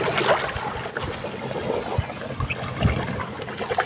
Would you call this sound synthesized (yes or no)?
no